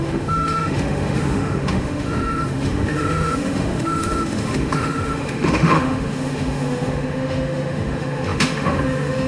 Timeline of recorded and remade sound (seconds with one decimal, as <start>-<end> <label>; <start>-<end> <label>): 0.0-9.3 remade